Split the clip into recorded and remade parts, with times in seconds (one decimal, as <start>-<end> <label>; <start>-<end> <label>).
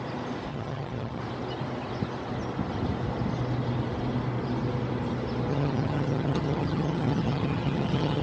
0.0-0.5 recorded; 0.5-1.2 remade; 1.2-5.5 recorded; 5.5-8.2 remade